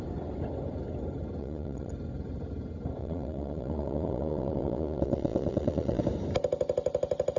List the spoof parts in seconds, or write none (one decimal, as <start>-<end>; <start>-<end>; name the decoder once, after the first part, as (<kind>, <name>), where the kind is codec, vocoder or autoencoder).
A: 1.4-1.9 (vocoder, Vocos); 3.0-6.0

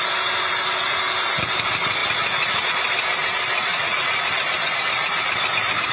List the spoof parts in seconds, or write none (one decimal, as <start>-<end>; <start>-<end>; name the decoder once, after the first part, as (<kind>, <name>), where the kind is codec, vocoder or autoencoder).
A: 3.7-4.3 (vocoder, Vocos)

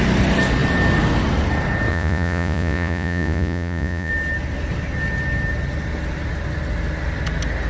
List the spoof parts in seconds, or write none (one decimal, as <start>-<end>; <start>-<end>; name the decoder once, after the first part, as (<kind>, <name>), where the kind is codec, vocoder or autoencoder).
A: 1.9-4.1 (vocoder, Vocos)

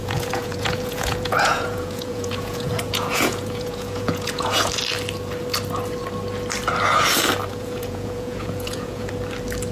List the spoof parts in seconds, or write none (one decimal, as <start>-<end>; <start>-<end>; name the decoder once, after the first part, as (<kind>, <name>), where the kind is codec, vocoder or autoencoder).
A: 0.0-4.7 (vocoder, Vocos); 7.5-9.1

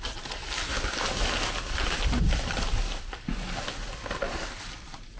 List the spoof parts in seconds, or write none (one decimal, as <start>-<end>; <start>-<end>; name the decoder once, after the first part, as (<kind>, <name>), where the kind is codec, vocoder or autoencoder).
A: none